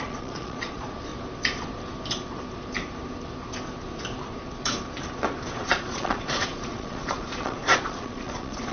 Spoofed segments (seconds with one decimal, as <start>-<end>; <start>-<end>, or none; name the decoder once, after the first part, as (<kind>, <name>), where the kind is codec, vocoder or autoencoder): 0.0-1.1 (vocoder, Vocos); 5.5-8.7